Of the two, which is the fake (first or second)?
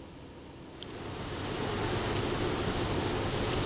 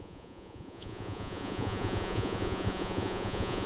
second